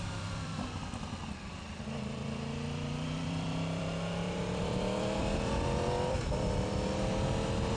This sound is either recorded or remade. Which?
remade